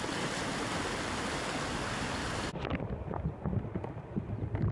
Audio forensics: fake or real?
real